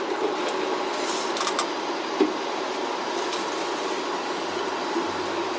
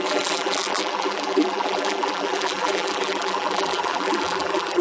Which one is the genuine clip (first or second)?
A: first